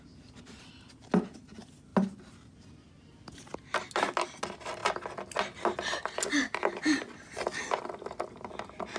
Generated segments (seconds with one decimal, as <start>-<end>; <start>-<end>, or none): none